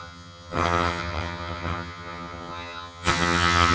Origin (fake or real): fake